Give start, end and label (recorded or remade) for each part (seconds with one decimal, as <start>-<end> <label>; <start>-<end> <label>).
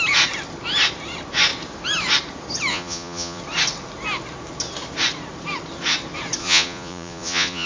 0.0-2.7 recorded; 2.7-3.4 remade; 3.4-6.4 recorded; 6.4-7.7 remade